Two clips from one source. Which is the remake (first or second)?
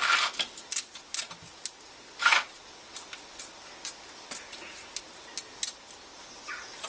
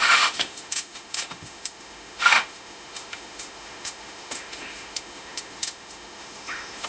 second